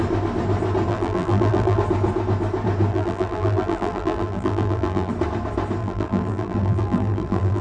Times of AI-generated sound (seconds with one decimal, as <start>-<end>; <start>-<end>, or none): 0.9-1.8; 2.9-5.1; 5.8-7.6